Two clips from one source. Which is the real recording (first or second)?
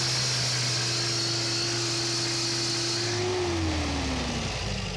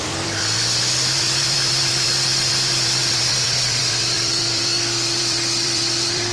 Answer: first